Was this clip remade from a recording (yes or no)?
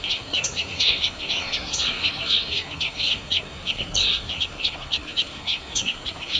yes